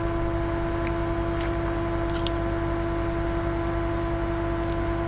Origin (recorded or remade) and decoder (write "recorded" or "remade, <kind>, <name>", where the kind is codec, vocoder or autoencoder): recorded